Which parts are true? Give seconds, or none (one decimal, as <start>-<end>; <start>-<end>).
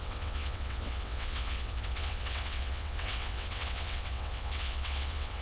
none